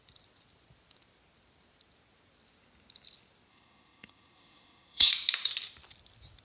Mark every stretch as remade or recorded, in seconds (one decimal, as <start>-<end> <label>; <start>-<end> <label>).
0.0-3.5 recorded; 3.5-5.1 remade; 5.1-6.4 recorded